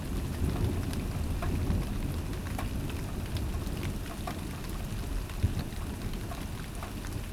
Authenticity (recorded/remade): recorded